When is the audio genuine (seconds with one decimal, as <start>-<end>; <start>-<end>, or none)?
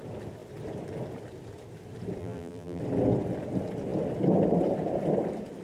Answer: 0.0-2.2; 2.8-5.6